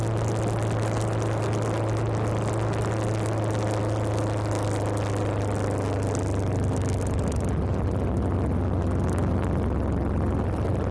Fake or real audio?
real